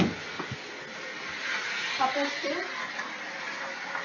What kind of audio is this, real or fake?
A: real